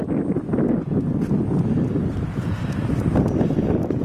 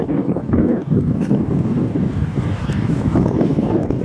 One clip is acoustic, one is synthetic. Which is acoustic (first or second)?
first